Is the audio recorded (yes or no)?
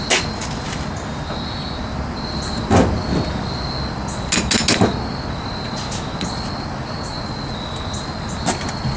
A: yes